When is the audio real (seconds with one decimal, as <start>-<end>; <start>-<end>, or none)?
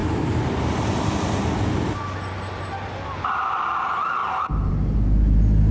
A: 0.0-5.7